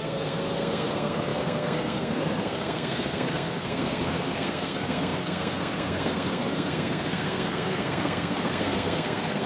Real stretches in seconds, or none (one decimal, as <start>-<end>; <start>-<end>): none